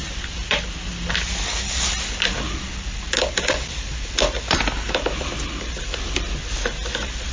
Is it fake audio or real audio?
real